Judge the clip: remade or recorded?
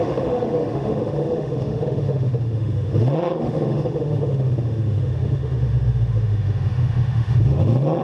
remade